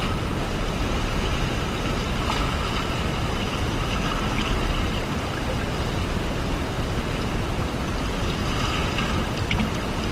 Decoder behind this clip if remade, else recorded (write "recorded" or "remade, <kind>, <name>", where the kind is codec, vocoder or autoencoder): recorded